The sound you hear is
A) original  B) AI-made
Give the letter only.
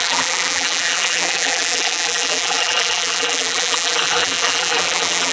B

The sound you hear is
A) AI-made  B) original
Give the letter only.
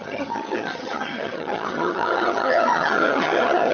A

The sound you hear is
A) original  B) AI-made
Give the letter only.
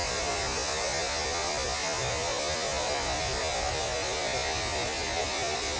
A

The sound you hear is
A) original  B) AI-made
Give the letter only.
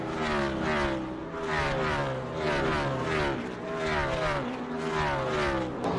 A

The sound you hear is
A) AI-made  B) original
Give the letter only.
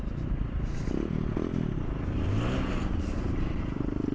B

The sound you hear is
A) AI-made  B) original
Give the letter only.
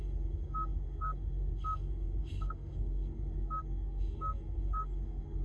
A